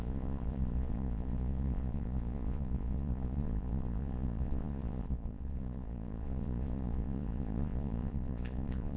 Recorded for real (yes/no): no